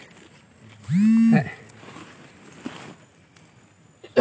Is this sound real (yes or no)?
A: yes